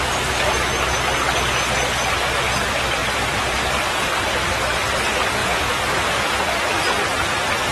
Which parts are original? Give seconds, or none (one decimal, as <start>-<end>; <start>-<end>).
0.0-5.4; 6.2-7.7